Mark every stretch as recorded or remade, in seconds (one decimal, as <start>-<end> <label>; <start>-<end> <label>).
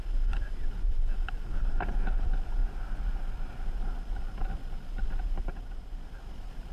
0.0-6.7 recorded